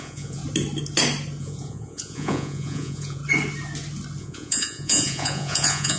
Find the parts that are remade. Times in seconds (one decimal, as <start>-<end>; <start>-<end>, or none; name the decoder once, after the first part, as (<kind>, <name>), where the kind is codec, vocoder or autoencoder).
0.0-0.4 (vocoder, Vocos); 1.4-3.2; 4.2-6.0